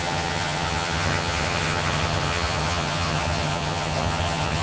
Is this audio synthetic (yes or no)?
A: yes